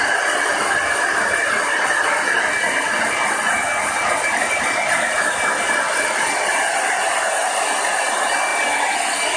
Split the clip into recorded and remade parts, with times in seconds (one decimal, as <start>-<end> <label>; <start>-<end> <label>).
0.0-9.4 recorded